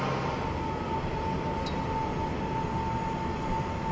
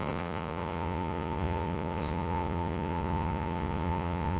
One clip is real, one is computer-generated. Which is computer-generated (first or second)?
second